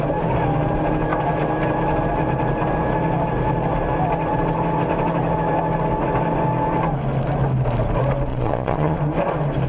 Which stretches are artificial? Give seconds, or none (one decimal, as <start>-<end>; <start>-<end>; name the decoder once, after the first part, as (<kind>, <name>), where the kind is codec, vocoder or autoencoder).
8.3-9.0 (vocoder, Vocos)

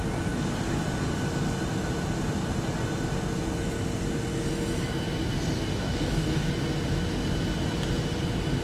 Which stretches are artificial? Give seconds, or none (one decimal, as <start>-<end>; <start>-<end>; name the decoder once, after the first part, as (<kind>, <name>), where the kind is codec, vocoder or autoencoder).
5.8-6.5 (codec, DAC)

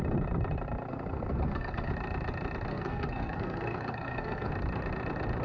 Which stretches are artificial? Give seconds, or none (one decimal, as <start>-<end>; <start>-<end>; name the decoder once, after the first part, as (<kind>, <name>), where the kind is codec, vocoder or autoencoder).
0.9-1.9 (codec, SNAC); 2.7-4.5